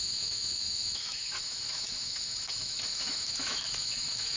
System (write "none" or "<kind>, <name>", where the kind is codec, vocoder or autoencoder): autoencoder, DAC-VAE